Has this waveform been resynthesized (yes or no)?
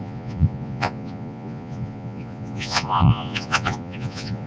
yes